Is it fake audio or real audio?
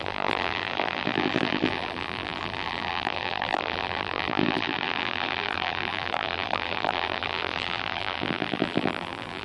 fake